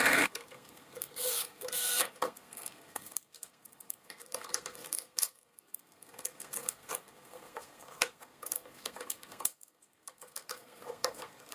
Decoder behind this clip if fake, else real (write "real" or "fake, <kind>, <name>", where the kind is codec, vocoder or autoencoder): fake, codec, SNAC